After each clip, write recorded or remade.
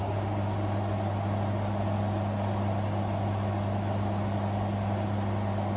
recorded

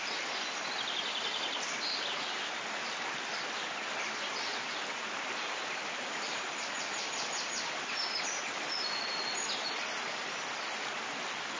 recorded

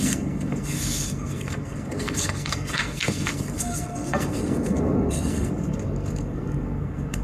remade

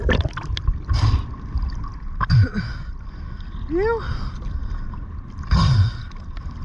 recorded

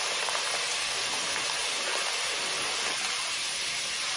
recorded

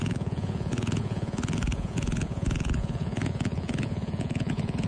remade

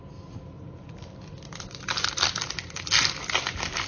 recorded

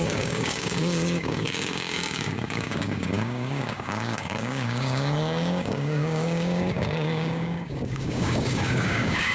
remade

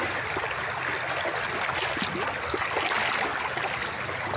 recorded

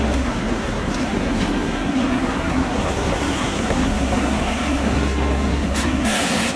remade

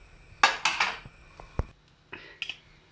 recorded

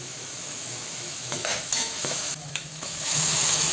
remade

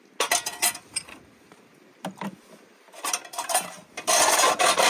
recorded